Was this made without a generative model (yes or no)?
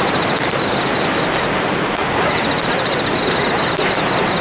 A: no